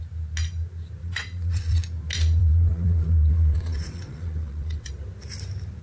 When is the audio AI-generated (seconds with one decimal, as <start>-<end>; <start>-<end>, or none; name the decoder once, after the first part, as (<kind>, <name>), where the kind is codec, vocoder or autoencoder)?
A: 1.0-1.8 (vocoder, WaveNeXt); 2.4-4.9